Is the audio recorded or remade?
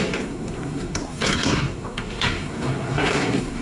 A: remade